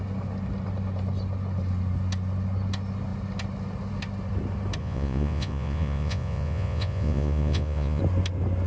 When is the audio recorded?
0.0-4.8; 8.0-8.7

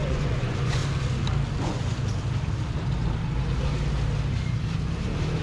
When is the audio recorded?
0.8-1.6; 2.0-5.4

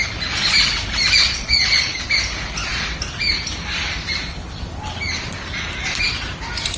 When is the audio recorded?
0.0-1.2; 2.1-6.8

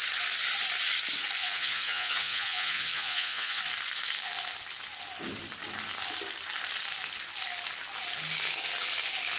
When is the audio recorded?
0.0-1.4; 3.6-9.4

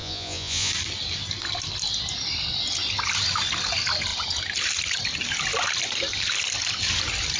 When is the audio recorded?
0.7-7.4

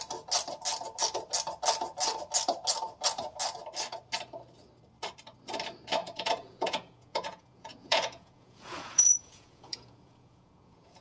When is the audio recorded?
0.0-6.0